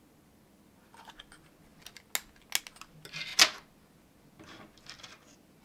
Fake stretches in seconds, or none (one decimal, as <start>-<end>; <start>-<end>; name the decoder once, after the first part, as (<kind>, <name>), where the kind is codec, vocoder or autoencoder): none